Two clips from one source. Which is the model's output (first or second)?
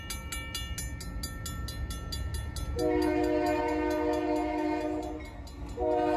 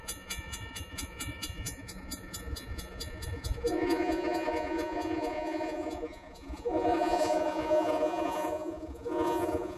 second